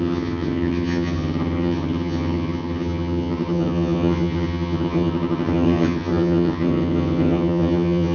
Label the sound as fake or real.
fake